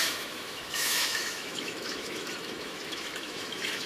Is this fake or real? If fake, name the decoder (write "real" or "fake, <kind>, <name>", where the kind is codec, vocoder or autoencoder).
fake, autoencoder, DAC-VAE